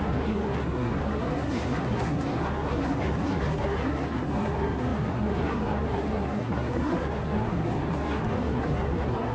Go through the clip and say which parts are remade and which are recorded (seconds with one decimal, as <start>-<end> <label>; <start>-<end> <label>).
0.0-9.3 remade